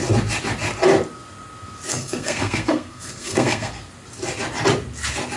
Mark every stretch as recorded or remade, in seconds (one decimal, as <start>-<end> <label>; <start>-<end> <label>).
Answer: 0.0-1.9 recorded; 1.9-3.7 remade; 3.7-5.4 recorded